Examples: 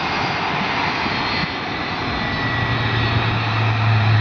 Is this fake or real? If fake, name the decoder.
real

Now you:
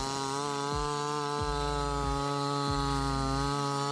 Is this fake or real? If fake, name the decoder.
real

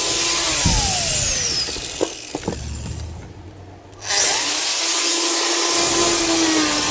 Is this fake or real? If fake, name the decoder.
real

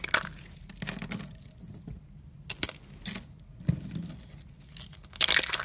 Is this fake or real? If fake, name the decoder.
real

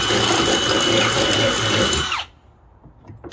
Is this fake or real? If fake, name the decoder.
real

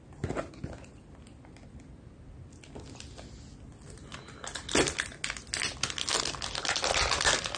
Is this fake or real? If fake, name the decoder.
real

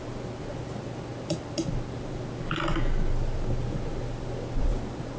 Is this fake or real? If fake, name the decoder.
real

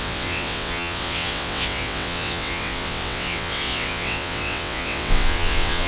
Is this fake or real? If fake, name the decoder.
fake, vocoder, WaveNeXt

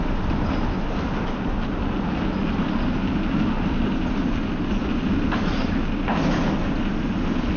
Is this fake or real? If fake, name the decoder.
real